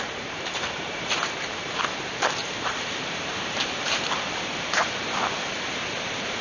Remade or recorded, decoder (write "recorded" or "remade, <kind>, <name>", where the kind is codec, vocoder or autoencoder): remade, vocoder, BigVGAN v2